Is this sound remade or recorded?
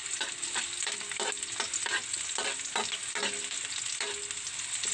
recorded